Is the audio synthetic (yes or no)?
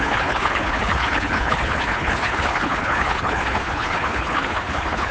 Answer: yes